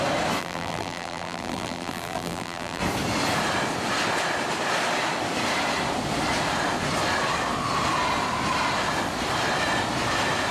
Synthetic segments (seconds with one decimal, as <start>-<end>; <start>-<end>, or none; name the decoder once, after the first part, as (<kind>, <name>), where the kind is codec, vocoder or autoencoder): 0.4-2.8 (vocoder, BigVGAN v2)